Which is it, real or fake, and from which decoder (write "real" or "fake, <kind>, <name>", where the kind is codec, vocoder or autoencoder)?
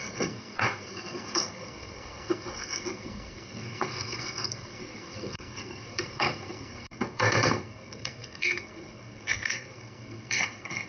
fake, codec, SNAC